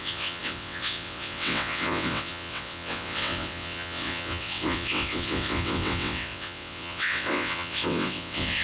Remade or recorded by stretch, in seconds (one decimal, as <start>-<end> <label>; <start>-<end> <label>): 0.0-8.6 remade